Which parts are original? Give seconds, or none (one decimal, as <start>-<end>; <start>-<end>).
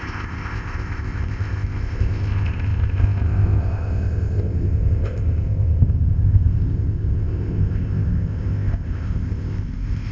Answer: none